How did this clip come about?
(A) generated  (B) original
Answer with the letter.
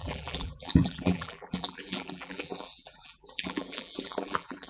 A